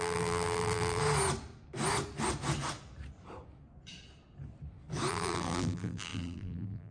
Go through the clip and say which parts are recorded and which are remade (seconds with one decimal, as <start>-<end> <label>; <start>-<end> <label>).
0.0-1.0 remade; 1.0-5.1 recorded; 5.1-6.9 remade